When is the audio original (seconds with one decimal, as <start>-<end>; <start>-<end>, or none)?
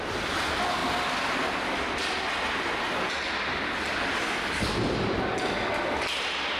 0.0-6.6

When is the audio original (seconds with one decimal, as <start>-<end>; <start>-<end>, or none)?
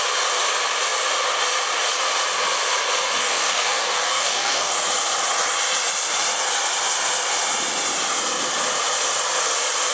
0.0-3.2; 4.7-9.9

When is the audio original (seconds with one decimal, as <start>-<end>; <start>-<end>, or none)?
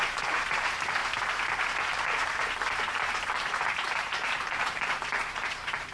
1.0-1.8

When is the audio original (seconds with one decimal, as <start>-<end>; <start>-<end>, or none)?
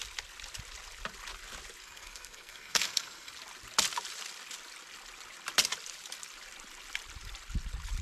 0.0-1.8; 3.3-8.0